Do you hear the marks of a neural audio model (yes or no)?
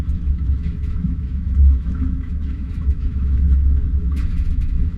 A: yes